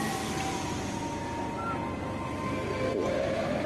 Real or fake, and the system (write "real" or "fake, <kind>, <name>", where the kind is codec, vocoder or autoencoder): real